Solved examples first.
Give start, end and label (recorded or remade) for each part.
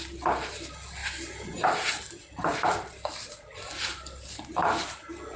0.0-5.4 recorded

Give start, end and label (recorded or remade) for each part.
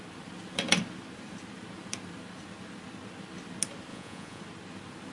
0.0-3.9 recorded; 3.9-4.4 remade; 4.4-5.1 recorded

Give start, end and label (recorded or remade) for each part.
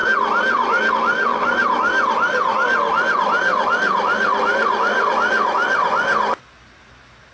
0.0-7.3 recorded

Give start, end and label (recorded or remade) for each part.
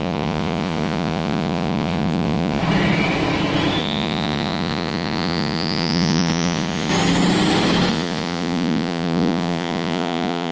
0.0-2.6 remade; 2.6-3.8 recorded; 3.8-6.9 remade; 6.9-7.9 recorded; 7.9-10.5 remade